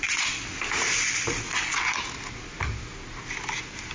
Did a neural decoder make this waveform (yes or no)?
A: no